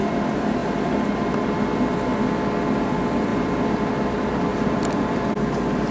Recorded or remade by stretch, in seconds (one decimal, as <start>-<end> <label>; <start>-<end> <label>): 0.0-3.3 recorded; 3.3-3.9 remade; 3.9-4.5 recorded; 4.5-5.1 remade; 5.1-5.9 recorded